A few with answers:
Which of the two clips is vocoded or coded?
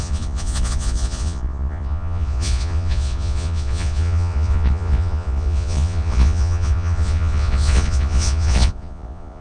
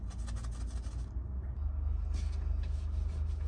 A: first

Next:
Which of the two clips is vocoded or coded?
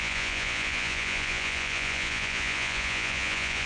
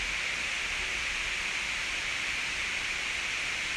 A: first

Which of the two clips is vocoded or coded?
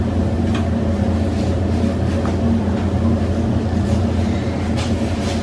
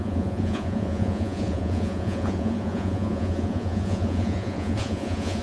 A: second